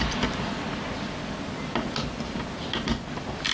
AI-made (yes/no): no